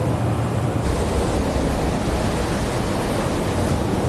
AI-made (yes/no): no